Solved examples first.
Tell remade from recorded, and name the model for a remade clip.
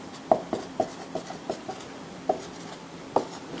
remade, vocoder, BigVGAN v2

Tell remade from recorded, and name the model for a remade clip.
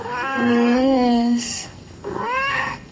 remade, codec, SNAC